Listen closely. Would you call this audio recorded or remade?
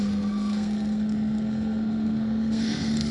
remade